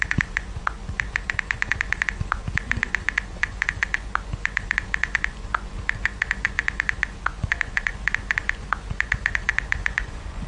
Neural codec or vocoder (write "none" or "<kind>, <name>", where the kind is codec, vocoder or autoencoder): vocoder, Vocos